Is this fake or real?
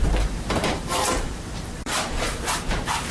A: fake